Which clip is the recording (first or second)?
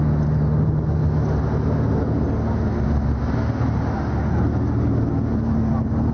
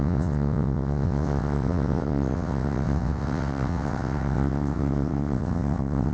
first